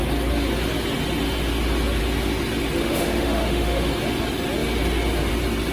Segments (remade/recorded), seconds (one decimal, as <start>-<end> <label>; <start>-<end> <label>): 0.0-2.8 recorded; 2.8-3.9 remade; 3.9-5.7 recorded